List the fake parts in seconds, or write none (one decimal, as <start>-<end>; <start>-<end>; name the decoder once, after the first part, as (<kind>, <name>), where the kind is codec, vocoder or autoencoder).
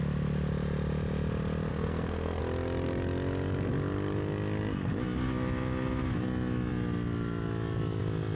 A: 1.7-2.4 (codec, SNAC)